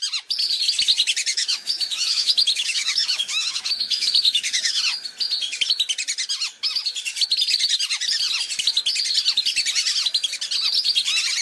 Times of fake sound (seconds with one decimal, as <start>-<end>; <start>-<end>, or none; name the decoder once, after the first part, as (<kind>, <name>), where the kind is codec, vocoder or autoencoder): 1.3-4.8 (autoencoder, DAC-VAE)